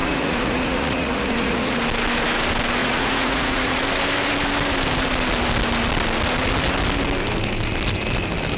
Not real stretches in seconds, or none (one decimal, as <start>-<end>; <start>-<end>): 0.0-1.8; 2.8-3.8